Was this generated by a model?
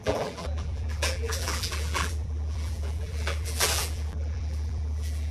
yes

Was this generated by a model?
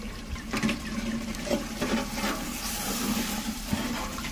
yes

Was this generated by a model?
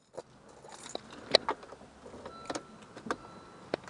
no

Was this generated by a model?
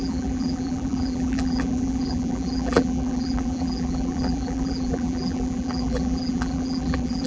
yes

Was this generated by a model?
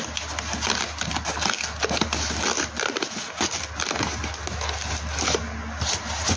no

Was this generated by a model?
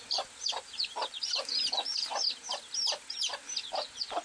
no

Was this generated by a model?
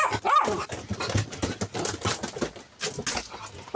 no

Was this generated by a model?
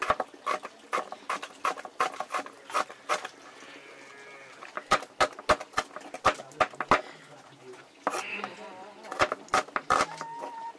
no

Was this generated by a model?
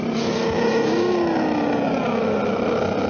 no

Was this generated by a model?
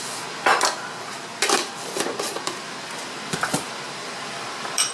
yes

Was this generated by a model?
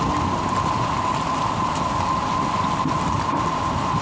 no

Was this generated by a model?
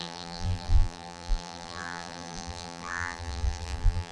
yes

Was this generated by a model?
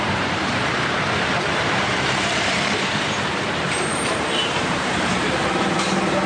yes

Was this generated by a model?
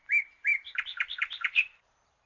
yes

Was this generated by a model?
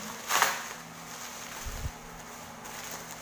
no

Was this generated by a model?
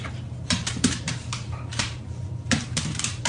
yes